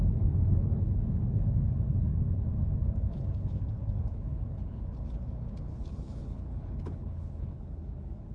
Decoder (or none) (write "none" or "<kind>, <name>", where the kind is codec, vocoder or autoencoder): codec, HILCodec